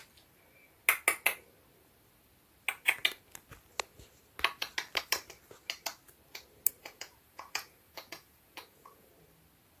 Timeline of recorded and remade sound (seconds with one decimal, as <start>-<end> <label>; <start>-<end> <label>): 0.0-6.8 recorded; 6.8-9.1 remade; 9.1-9.8 recorded